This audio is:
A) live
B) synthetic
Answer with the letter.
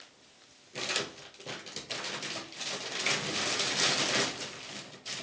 A